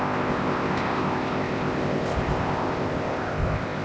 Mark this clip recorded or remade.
remade